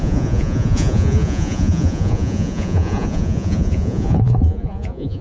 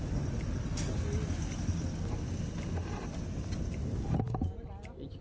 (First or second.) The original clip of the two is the second